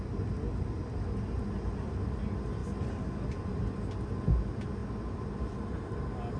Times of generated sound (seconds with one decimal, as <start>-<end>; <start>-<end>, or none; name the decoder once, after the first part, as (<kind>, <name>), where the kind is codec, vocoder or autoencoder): none